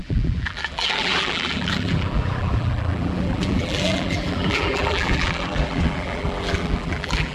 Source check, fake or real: fake